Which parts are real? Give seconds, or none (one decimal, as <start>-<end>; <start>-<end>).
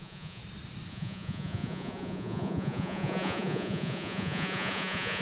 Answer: 0.4-0.9